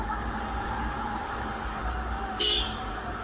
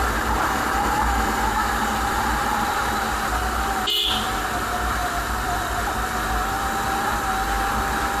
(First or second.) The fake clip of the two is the first